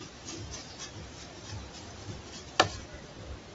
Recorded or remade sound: recorded